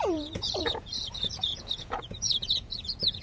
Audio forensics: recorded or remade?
remade